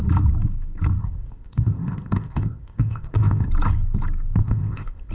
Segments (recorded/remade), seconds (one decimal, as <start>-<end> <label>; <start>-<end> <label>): 0.0-1.0 recorded; 1.0-3.5 remade; 3.5-4.4 recorded; 4.4-5.1 remade

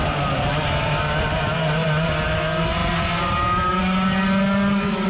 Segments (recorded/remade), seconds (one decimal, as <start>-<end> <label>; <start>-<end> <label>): 0.0-5.1 recorded

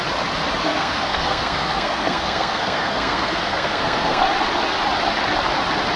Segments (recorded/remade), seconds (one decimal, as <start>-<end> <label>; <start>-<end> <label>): 0.0-0.6 recorded; 0.6-4.2 remade; 4.2-6.0 recorded

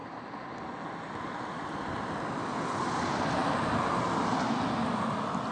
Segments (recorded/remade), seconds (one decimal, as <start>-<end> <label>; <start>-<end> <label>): 0.0-5.5 recorded